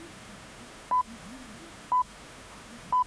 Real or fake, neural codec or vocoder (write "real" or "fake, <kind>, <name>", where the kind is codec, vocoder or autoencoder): fake, autoencoder, DAC-VAE